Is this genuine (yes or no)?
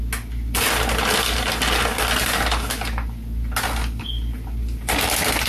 yes